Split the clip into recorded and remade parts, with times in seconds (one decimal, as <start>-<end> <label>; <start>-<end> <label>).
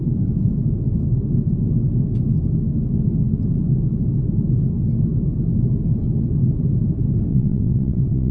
0.0-7.3 recorded; 7.3-8.3 remade